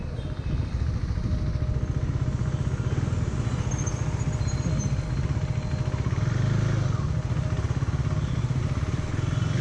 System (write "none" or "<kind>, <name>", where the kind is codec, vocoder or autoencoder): none